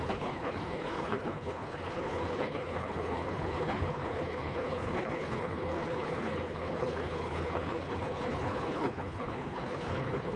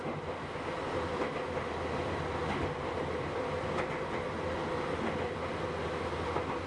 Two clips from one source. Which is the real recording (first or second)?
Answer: second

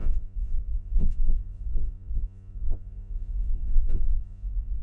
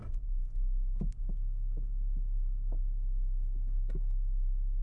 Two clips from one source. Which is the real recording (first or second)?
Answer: second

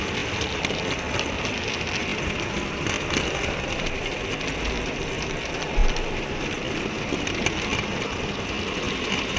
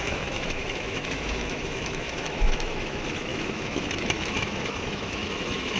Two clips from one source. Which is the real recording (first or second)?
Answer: first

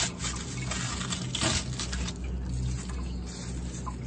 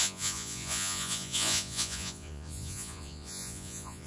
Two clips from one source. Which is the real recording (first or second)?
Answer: first